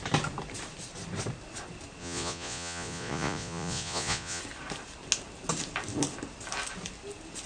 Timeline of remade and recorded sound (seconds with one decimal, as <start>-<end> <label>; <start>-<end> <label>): 0.0-2.0 recorded; 2.0-4.4 remade; 4.4-7.5 recorded

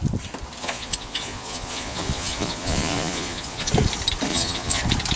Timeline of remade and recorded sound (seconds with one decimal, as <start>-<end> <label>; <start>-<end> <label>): 0.0-0.6 recorded; 0.6-3.7 remade; 3.7-4.3 recorded; 4.3-4.8 remade; 4.8-5.2 recorded

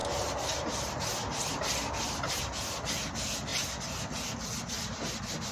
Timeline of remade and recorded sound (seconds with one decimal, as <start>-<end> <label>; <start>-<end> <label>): 0.0-5.5 recorded

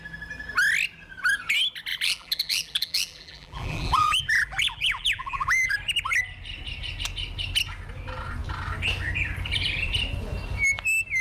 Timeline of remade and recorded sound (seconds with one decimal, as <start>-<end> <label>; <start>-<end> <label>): 0.0-1.9 recorded; 1.9-5.7 remade; 5.7-11.2 recorded